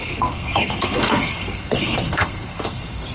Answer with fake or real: fake